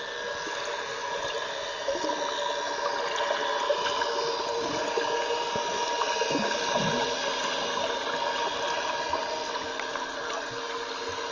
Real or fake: real